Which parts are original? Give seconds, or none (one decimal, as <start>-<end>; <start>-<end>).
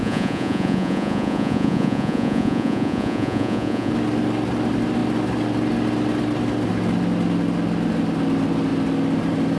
3.9-9.6